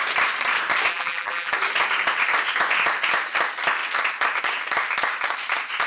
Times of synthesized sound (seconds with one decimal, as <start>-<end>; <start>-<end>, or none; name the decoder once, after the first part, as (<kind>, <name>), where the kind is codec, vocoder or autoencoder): 0.9-1.5 (vocoder, BigVGAN v2)